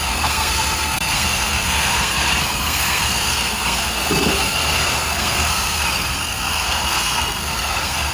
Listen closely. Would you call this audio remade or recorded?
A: remade